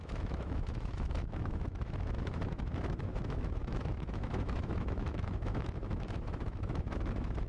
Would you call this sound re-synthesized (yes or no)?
yes